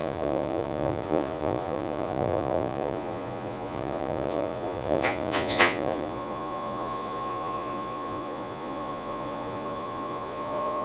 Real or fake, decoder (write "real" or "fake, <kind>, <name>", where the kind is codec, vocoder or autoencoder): fake, vocoder, Vocos